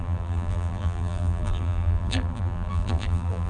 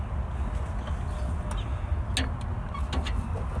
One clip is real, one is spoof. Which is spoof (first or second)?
first